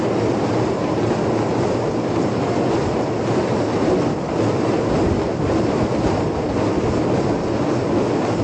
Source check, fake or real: real